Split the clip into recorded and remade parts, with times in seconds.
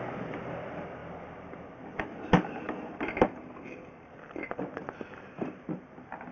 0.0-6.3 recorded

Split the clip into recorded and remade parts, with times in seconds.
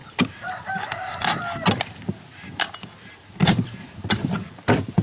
0.0-5.0 recorded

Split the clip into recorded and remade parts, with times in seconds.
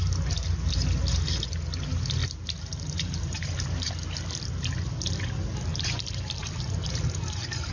0.0-2.2 recorded; 2.2-3.9 remade; 3.9-5.7 recorded; 5.7-7.7 remade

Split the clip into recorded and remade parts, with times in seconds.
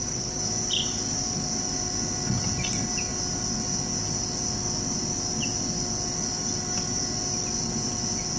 0.0-8.4 recorded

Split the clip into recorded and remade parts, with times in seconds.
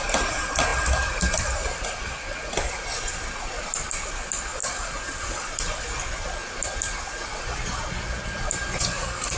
0.0-4.6 recorded; 4.6-5.8 remade; 5.8-9.4 recorded